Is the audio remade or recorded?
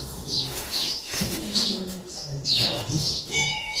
remade